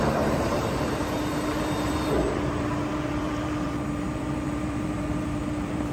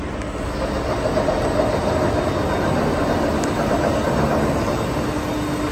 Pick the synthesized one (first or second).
first